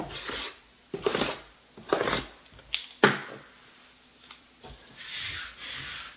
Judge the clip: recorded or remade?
recorded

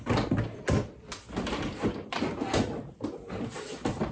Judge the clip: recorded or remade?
recorded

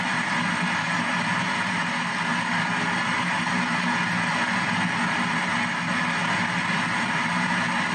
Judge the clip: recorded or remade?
recorded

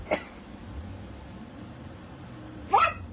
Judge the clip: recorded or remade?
recorded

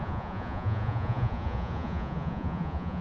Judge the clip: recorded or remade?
remade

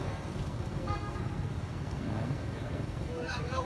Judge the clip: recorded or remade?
remade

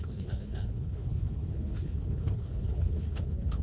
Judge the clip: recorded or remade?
remade